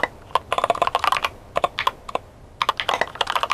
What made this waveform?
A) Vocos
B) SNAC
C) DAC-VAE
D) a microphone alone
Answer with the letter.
D